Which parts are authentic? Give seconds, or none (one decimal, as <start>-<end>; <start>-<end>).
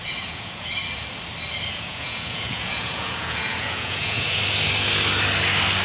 0.7-1.7; 4.4-5.8